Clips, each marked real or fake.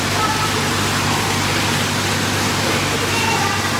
real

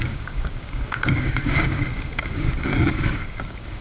fake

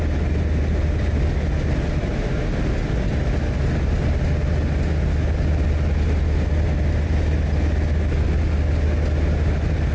real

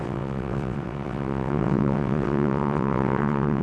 fake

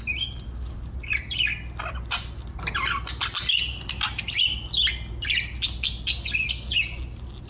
real